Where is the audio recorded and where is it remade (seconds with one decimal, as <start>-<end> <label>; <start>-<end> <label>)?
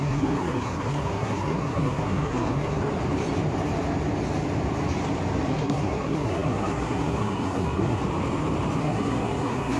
0.0-2.8 remade; 2.8-5.5 recorded; 5.5-8.0 remade; 8.0-8.8 recorded; 8.8-9.8 remade